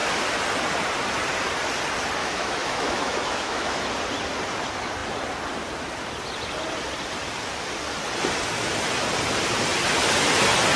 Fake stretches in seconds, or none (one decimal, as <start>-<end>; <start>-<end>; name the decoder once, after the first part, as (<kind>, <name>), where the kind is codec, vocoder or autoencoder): 2.2-3.8 (autoencoder, DAC-VAE)